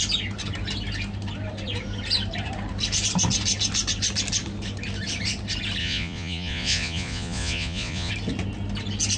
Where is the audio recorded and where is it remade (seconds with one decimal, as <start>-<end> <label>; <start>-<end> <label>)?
0.0-5.8 recorded; 5.8-8.1 remade; 8.1-9.2 recorded